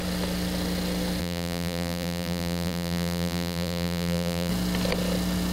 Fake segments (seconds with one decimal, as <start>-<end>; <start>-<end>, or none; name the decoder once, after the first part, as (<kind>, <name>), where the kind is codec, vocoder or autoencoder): 1.2-4.5 (vocoder, BigVGAN v2)